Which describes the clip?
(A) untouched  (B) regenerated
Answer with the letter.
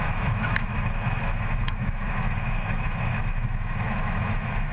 B